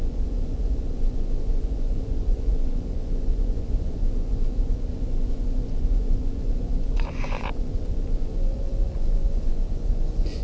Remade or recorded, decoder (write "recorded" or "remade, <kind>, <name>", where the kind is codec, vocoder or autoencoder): remade, vocoder, Vocos